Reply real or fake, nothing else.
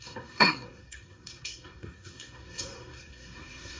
fake